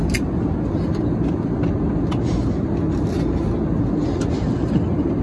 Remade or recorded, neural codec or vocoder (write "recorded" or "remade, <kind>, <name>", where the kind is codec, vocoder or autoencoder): recorded